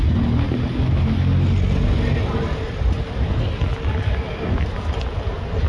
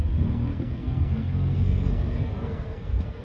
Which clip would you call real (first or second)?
first